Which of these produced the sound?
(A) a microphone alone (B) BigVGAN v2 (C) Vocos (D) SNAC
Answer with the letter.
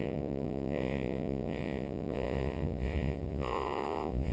C